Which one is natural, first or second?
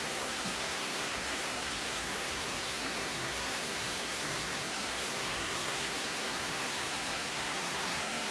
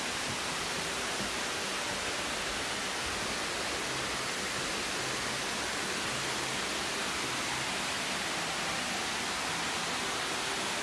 second